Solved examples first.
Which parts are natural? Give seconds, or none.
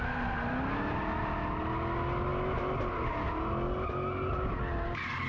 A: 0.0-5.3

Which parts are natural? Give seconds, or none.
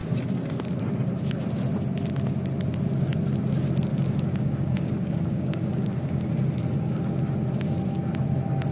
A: 0.0-3.9; 6.3-8.7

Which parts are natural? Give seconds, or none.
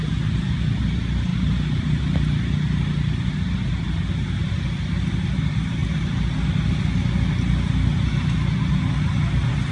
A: 0.0-9.7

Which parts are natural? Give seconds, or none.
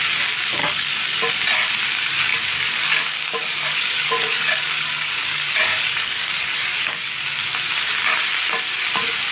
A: 0.0-0.6; 1.2-2.3; 7.2-9.3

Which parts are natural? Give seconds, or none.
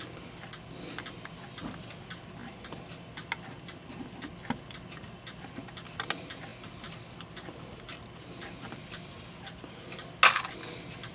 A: 0.0-11.1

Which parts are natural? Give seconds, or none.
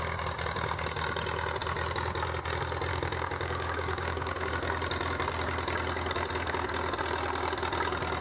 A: 0.0-2.9; 4.5-8.2